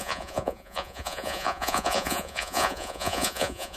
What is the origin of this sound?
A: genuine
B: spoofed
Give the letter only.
B